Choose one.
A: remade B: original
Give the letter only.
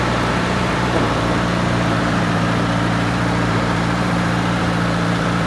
A